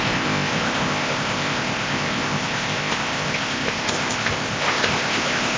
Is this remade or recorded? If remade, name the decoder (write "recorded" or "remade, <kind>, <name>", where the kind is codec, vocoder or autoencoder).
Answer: remade, codec, ZipCodec